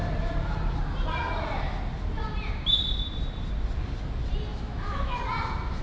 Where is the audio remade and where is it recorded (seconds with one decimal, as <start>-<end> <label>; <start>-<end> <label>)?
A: 0.0-4.5 recorded; 4.5-5.2 remade; 5.2-5.8 recorded